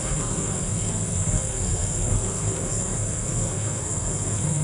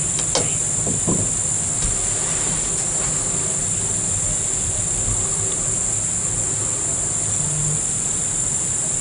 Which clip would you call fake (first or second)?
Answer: first